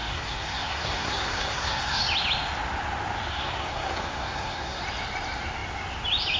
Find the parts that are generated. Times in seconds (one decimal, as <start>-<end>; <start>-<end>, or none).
0.0-2.0; 3.3-4.8

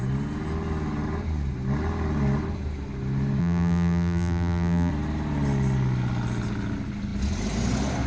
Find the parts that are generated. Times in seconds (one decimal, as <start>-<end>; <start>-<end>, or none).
3.4-4.9

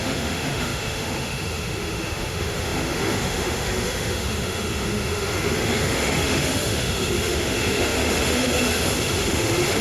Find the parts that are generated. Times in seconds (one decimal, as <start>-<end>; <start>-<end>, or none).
0.0-9.8

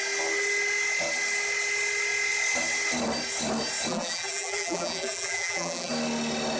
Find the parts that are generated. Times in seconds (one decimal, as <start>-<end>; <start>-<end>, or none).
3.9-5.9

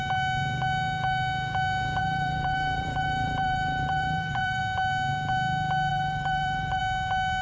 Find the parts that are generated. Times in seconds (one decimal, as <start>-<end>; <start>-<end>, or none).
2.0-4.6; 5.9-6.8